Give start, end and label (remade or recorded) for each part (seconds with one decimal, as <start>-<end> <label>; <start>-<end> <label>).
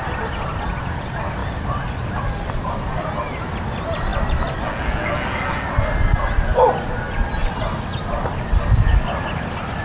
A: 0.0-1.4 recorded; 1.4-2.2 remade; 2.2-9.8 recorded